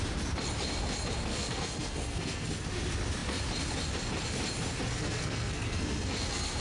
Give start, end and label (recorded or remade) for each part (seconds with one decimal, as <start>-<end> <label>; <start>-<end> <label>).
0.0-1.3 recorded; 1.3-2.6 remade; 2.6-4.9 recorded; 4.9-6.6 remade